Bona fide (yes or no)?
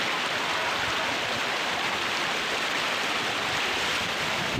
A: yes